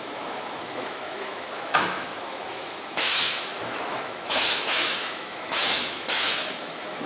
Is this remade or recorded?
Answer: remade